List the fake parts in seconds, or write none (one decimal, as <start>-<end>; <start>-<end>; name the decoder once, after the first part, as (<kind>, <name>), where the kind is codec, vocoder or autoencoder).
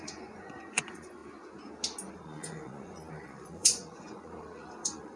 0.0-1.2 (vocoder, Vocos); 2.1-5.2